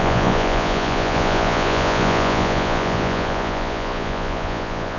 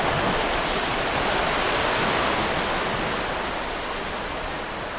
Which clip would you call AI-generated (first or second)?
first